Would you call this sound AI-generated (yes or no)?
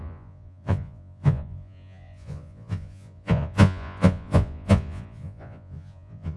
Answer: yes